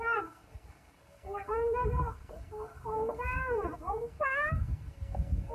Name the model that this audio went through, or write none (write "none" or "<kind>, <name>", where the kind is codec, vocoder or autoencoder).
codec, SNAC